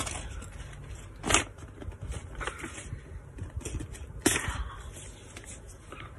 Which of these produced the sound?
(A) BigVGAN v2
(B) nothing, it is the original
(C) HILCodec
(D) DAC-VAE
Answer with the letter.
B